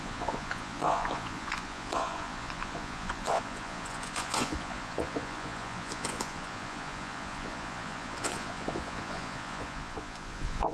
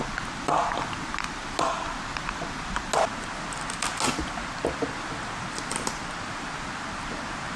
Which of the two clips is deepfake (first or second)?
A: first